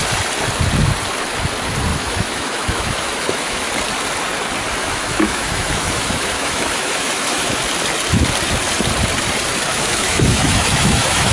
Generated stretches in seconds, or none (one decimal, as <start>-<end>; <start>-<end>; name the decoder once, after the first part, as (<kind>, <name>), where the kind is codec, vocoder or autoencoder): 1.9-3.7 (autoencoder, DAC-VAE); 4.8-7.6; 9.7-11.3